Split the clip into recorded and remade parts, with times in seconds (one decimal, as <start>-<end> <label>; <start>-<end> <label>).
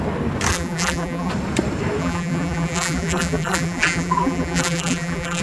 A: 0.0-0.5 recorded; 0.5-1.3 remade; 1.3-2.0 recorded; 2.0-5.4 remade